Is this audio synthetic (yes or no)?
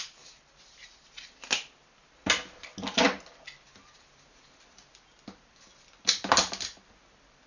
no